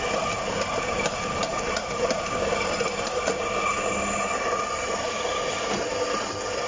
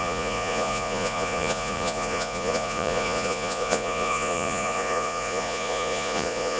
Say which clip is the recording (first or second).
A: first